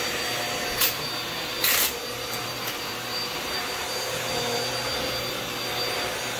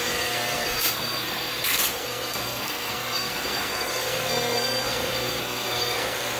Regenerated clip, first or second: second